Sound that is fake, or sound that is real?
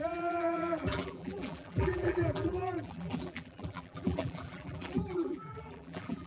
fake